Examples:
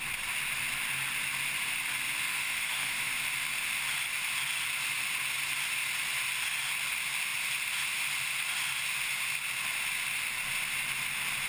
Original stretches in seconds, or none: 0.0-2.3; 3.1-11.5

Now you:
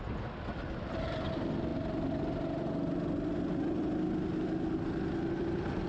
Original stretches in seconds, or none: 0.0-5.9

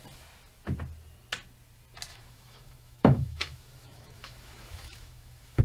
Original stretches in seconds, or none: 0.0-2.1

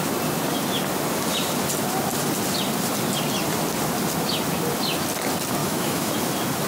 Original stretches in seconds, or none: 0.0-5.6; 6.1-6.7